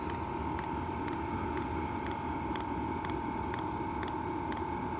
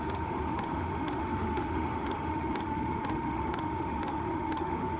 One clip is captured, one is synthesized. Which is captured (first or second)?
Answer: first